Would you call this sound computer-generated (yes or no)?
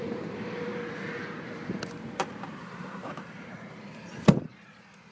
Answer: yes